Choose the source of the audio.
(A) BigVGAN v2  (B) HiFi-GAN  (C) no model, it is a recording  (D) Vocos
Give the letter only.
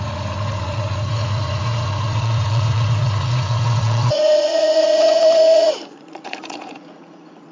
D